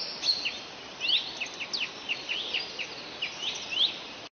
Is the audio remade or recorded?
recorded